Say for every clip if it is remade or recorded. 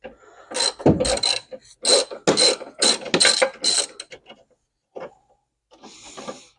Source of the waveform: recorded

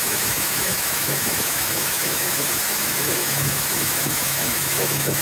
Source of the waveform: remade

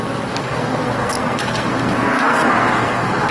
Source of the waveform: remade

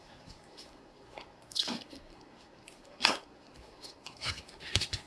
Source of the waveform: remade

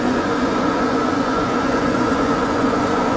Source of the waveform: remade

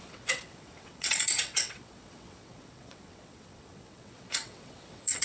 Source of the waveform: remade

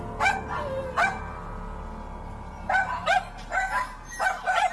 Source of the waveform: recorded